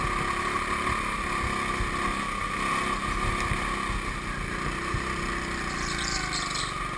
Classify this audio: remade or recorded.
recorded